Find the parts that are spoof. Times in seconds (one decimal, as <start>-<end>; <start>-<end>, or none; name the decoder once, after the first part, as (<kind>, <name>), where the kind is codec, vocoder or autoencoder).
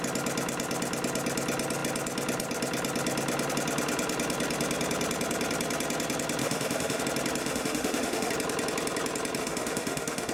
6.4-7.0 (autoencoder, DAC-VAE); 7.4-8.3; 9.4-10.3